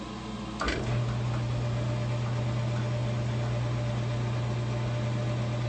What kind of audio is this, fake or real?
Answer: real